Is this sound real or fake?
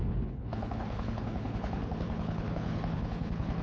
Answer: fake